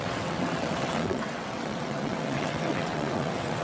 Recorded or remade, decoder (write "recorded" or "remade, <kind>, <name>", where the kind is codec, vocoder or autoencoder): remade, vocoder, WaveNeXt